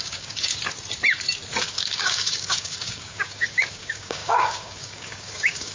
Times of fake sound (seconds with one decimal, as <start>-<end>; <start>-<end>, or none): 0.0-0.5; 1.6-5.7